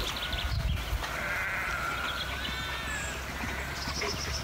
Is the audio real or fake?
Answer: real